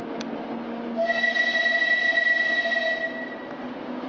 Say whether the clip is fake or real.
real